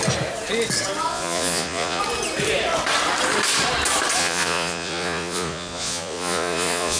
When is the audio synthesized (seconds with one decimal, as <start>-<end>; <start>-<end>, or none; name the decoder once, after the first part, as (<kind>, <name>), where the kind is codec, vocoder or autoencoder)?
1.1-2.0 (vocoder, Vocos); 4.2-7.0